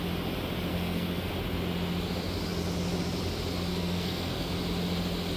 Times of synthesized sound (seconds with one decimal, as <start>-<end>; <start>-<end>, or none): 0.7-1.3; 3.7-4.5